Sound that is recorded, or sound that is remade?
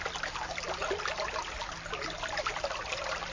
recorded